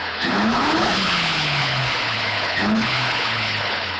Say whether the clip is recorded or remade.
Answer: remade